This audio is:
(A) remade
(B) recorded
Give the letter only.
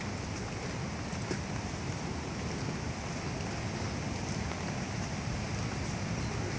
B